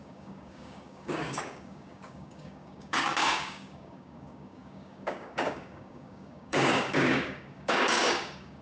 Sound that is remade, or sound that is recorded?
remade